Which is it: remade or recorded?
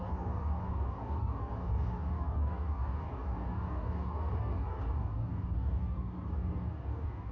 remade